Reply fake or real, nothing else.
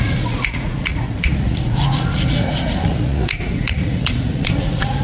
fake